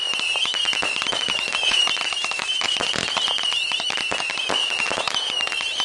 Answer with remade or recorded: remade